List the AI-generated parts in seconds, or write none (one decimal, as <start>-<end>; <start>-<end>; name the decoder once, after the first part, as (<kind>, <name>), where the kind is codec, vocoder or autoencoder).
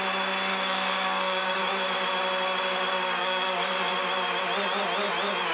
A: 0.5-1.6 (codec, DAC); 3.2-3.9